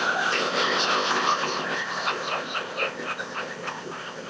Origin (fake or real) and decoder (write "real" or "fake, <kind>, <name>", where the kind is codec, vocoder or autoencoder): fake, codec, ZipCodec